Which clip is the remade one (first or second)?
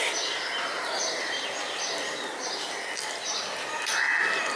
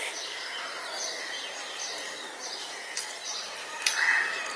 second